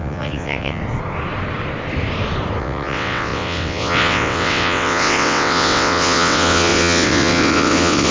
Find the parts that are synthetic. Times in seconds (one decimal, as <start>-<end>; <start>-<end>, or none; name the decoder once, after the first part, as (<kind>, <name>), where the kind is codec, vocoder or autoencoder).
0.0-0.8 (vocoder, WaveNeXt); 2.6-8.1